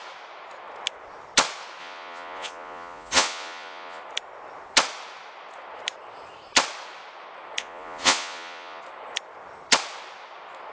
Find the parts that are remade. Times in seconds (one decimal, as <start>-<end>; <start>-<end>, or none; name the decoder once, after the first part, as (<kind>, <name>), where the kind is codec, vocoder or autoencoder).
1.8-4.0 (vocoder, Vocos); 7.6-8.8